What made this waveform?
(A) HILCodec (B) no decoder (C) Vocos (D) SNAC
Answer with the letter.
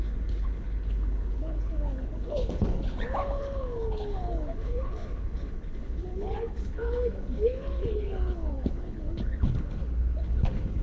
A